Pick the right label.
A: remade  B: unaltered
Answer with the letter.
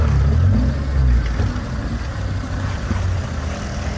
B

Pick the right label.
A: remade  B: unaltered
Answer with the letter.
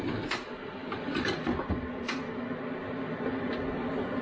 B